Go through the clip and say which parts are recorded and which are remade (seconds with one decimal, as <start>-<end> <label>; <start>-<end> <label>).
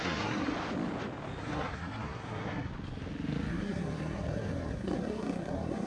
0.0-0.5 remade; 0.5-1.4 recorded; 1.4-2.7 remade; 2.7-3.5 recorded; 3.5-5.9 remade